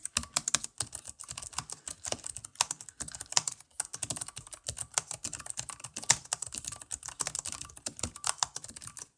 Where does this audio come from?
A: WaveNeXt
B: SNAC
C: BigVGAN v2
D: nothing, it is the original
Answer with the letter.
D